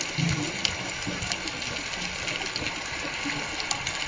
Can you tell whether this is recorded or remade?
recorded